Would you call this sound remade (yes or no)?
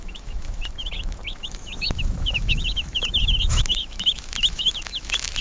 yes